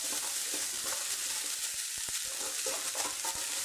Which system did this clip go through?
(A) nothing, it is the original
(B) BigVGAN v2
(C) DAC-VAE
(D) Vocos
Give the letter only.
A